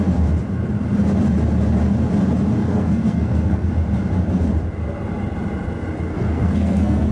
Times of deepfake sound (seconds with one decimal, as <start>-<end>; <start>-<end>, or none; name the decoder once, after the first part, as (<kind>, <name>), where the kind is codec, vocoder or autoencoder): 2.6-3.7 (codec, SNAC); 6.1-7.1